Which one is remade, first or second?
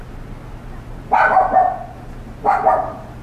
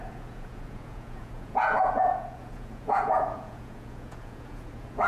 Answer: second